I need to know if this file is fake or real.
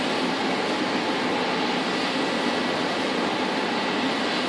real